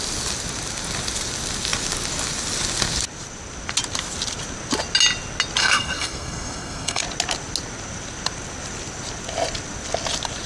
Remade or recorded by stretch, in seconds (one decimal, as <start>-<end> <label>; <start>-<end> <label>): 0.0-5.6 recorded; 5.6-7.0 remade; 7.0-10.5 recorded

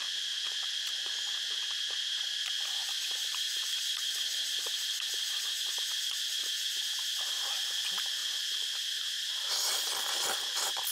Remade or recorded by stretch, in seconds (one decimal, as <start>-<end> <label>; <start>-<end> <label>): 0.0-10.9 recorded

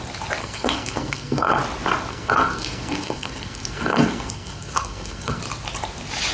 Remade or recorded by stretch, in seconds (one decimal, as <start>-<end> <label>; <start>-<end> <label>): 0.0-0.4 recorded; 0.4-1.6 remade; 1.6-2.1 recorded; 2.1-5.4 remade; 5.4-6.3 recorded